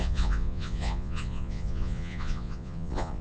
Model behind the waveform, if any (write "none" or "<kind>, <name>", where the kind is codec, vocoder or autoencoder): vocoder, Vocos